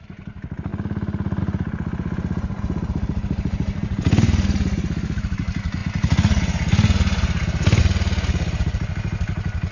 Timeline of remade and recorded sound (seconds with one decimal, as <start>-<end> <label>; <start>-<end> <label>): 0.0-9.7 recorded